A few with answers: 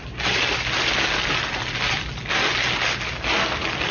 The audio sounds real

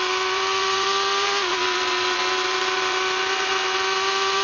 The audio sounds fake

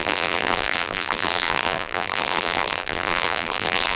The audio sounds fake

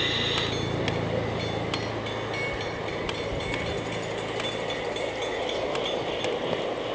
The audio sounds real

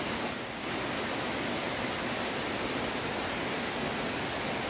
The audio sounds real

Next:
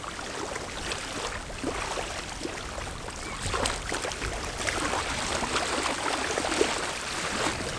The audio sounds real